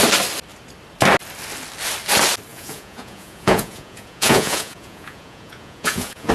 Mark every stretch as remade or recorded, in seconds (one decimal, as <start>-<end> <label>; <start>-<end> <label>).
0.0-2.5 recorded; 2.5-6.3 remade